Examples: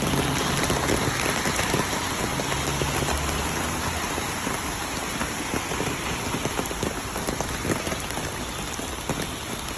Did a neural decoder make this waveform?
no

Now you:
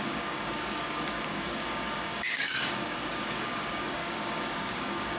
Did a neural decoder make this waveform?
yes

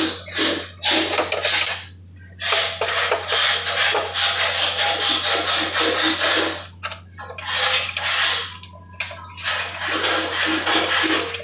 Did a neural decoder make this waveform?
no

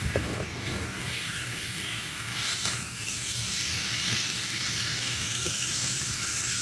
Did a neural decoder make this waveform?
yes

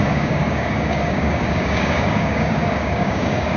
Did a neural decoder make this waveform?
yes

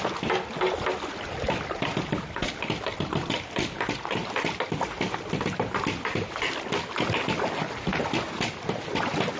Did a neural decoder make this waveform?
no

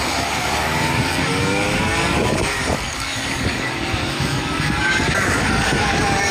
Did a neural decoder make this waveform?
yes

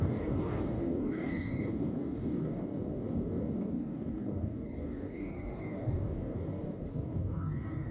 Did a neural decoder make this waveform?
yes